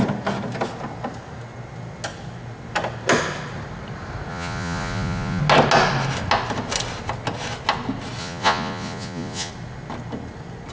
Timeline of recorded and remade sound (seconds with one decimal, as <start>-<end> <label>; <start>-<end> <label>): 0.0-4.3 recorded; 4.3-5.4 remade; 5.4-8.2 recorded; 8.2-9.5 remade; 9.5-10.7 recorded